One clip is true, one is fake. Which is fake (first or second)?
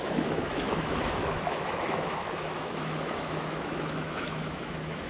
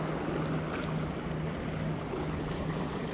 first